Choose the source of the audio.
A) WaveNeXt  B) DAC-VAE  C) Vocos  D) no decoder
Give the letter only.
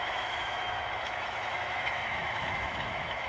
B